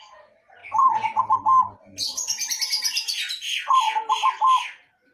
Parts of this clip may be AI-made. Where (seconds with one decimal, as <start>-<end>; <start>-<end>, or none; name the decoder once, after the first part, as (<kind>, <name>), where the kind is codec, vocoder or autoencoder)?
none